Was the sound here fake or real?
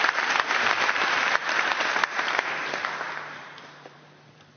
fake